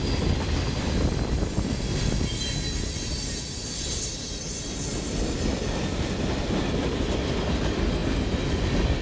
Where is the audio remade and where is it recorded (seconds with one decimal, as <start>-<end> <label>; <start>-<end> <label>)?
0.0-9.0 recorded